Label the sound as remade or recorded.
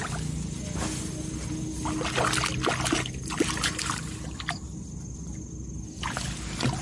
recorded